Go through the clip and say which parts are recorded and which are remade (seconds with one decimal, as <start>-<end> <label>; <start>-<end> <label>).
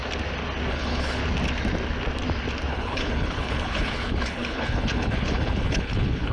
0.0-0.7 recorded; 0.7-1.2 remade; 1.2-2.7 recorded; 2.7-6.3 remade